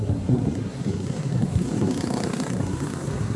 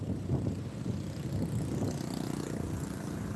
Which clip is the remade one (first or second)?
first